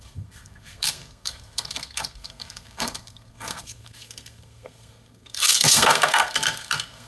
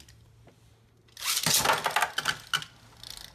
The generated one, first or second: first